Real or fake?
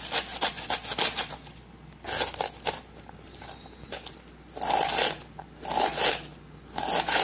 real